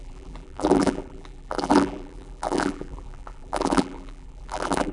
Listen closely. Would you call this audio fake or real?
fake